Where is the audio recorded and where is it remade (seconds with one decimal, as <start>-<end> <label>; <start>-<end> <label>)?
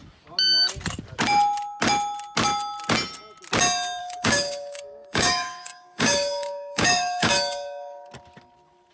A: 0.0-4.0 recorded; 4.0-8.1 remade; 8.1-8.9 recorded